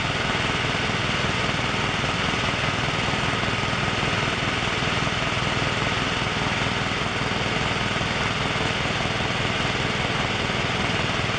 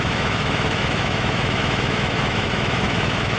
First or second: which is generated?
second